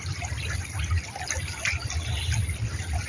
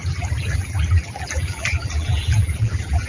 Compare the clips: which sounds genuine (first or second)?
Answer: first